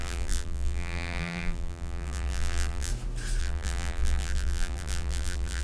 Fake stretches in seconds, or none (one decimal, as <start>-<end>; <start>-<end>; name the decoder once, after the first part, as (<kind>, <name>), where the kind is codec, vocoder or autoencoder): 0.0-2.9 (vocoder, BigVGAN v2); 3.4-5.6